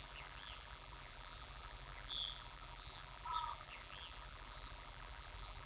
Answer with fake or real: fake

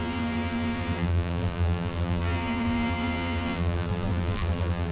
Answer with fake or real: fake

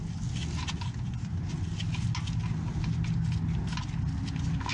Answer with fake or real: real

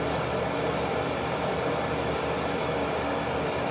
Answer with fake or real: real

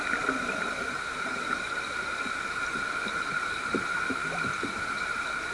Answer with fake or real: fake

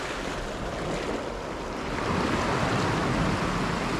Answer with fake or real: real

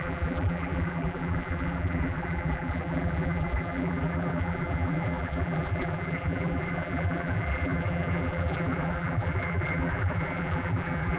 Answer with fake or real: fake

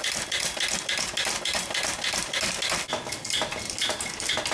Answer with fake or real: real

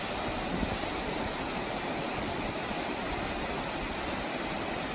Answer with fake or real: real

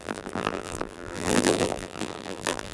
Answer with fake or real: fake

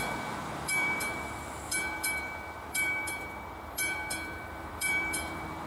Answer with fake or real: fake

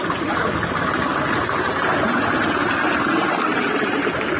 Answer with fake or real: real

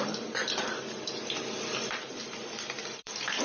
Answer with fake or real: fake